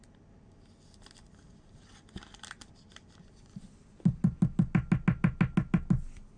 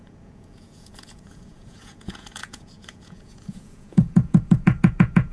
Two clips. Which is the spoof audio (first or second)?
second